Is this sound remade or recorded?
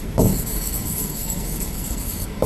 remade